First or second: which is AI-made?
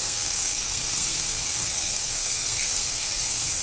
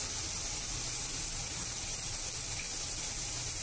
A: first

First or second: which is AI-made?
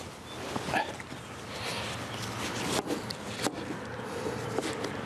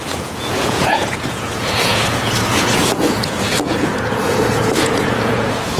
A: second